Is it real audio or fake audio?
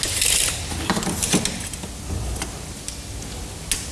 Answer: real